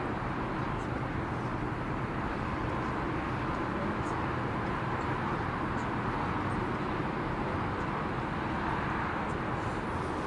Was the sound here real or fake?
real